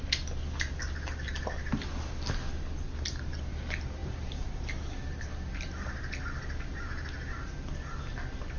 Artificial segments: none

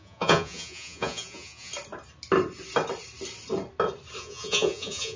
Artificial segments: 0.0-1.7 (vocoder, Vocos); 4.2-5.2

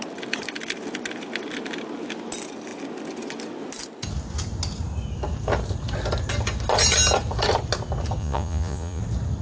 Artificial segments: 8.2-9.0 (vocoder, Vocos)